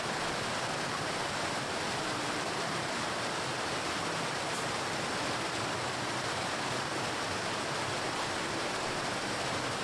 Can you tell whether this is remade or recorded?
remade